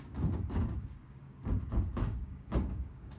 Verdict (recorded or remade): remade